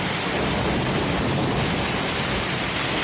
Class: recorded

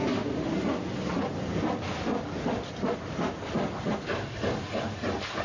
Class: remade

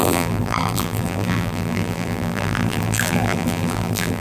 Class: remade